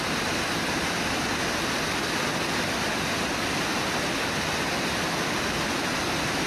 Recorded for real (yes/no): yes